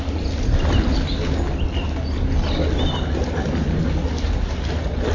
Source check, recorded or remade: recorded